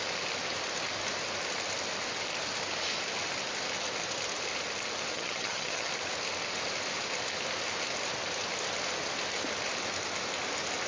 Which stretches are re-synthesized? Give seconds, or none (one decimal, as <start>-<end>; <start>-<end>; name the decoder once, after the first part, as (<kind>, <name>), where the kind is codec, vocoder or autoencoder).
5.1-5.9 (vocoder, HiFi-GAN)